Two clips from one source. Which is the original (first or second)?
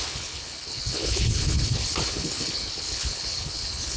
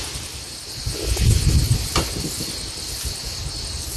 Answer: second